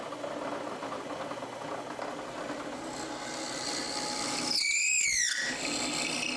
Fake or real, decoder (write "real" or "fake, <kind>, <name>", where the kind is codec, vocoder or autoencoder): real